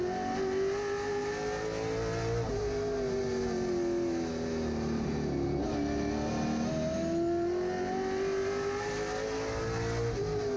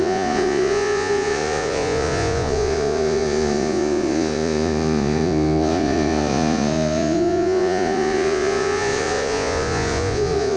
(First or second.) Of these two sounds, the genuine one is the first